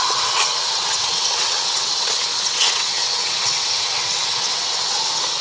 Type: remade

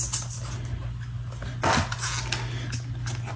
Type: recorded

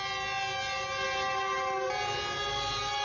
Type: recorded